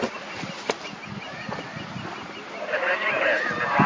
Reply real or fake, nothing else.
real